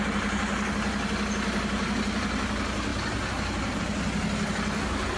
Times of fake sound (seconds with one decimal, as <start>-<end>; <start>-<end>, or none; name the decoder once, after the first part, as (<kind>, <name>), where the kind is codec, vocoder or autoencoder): none